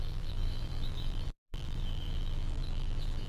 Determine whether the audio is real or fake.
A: fake